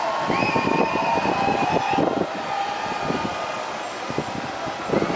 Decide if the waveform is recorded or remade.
recorded